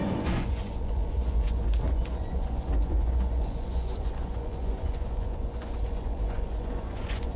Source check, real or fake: fake